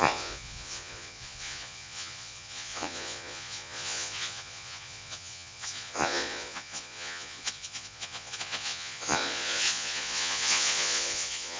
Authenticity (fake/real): fake